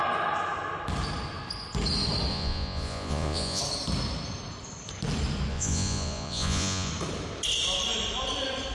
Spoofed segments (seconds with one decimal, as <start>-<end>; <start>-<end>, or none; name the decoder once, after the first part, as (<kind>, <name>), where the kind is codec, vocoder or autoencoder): 2.3-3.6 (vocoder, Vocos); 5.5-6.9